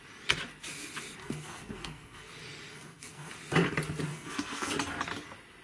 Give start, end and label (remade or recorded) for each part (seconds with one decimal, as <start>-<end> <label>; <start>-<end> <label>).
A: 0.0-1.2 recorded; 1.2-2.3 remade; 2.3-2.7 recorded; 2.7-3.3 remade; 3.3-4.1 recorded; 4.1-4.7 remade; 4.7-5.6 recorded